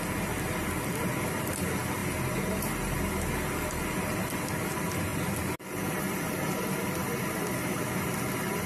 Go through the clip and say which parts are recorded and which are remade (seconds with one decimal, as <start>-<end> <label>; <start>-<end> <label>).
0.0-8.7 recorded